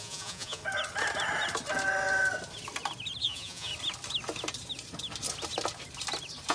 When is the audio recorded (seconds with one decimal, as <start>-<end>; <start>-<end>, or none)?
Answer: 0.6-3.2; 3.7-6.5